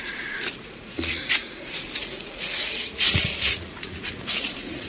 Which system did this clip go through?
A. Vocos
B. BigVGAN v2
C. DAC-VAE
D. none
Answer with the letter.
A